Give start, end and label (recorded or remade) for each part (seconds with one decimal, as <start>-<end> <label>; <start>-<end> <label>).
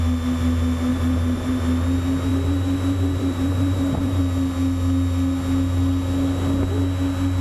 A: 0.0-0.9 recorded; 0.9-1.6 remade; 1.6-2.3 recorded; 2.3-4.2 remade; 4.2-7.4 recorded